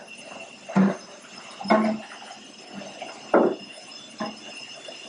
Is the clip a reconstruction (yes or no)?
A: no